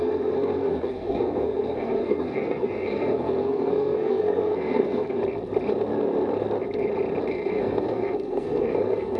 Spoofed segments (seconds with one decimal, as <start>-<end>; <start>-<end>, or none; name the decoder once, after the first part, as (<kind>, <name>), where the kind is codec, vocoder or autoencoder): 0.0-5.2 (codec, SNAC); 7.3-9.2